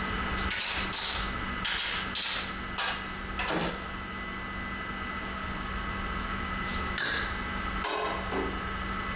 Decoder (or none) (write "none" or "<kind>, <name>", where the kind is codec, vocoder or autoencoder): none